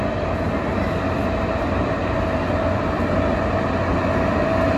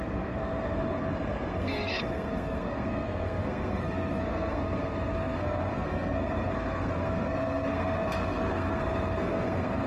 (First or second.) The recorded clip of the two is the first